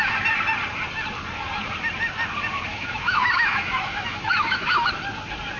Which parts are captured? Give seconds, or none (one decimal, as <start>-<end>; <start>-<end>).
0.0-2.7; 4.9-5.6